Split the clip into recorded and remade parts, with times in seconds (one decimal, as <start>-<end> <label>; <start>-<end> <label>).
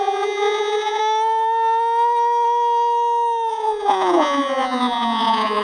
0.0-1.0 remade; 1.0-3.5 recorded; 3.5-5.6 remade